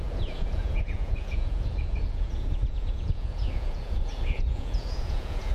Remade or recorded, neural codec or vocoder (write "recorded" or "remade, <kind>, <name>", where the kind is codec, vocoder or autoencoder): remade, vocoder, Vocos